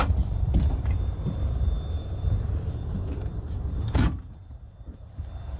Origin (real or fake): fake